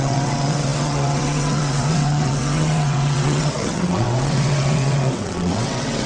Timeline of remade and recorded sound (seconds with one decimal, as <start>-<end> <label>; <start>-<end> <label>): 0.0-6.1 remade